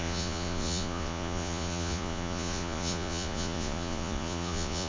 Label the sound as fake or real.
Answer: fake